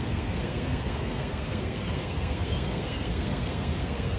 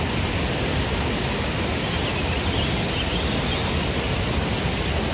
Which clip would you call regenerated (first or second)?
first